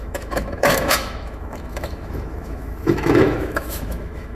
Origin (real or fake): fake